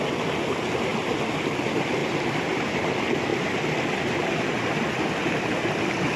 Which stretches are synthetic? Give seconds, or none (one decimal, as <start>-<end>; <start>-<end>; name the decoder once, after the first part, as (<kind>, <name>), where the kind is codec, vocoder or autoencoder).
2.0-2.9 (vocoder, BigVGAN v2)